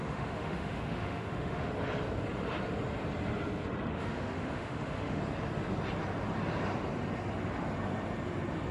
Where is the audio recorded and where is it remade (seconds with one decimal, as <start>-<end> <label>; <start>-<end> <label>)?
0.0-1.7 remade; 1.7-3.9 recorded; 3.9-5.2 remade; 5.2-8.7 recorded